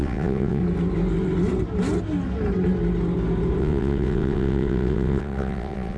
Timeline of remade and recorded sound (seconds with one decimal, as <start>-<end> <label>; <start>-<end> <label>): 0.0-0.6 remade; 0.6-3.6 recorded; 3.6-6.0 remade